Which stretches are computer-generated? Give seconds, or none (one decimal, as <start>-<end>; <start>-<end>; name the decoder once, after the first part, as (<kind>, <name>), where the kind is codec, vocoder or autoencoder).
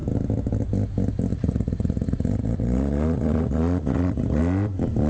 1.3-4.4 (vocoder, Vocos)